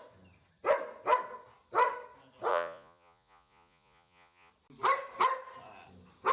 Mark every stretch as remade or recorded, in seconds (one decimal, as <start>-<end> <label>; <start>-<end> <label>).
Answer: 0.0-2.5 recorded; 2.5-4.5 remade; 4.5-6.3 recorded